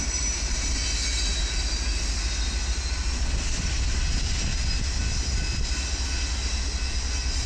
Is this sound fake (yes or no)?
no